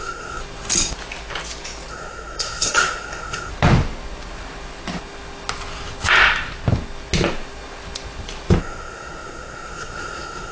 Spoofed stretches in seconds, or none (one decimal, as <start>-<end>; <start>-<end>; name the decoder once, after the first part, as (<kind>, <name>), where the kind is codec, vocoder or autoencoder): 0.0-0.4 (codec, SNAC); 1.9-3.5; 8.6-10.5